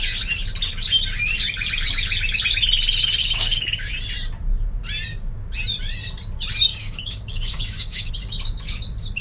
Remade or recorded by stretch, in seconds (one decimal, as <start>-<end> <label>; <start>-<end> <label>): 0.0-3.2 recorded; 3.2-3.9 remade; 3.9-6.7 recorded; 6.7-8.1 remade; 8.1-9.2 recorded